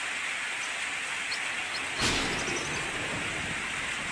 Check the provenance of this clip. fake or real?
real